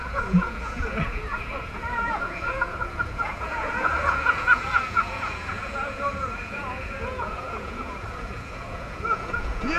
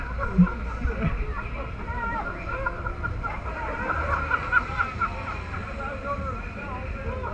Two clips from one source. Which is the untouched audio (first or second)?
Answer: second